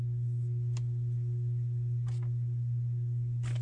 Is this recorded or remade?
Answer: recorded